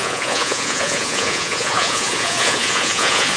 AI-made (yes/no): yes